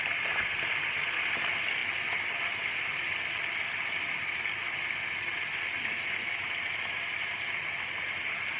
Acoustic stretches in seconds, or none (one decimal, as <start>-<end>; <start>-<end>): 0.0-8.6